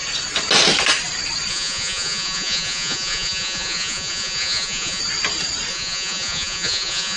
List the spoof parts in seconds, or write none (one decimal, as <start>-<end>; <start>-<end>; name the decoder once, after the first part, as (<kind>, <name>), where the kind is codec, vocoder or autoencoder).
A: 1.5-5.0 (vocoder, Vocos); 5.7-7.2